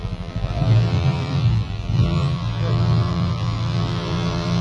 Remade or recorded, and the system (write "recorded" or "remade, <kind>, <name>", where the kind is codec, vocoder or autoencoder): remade, vocoder, BigVGAN v2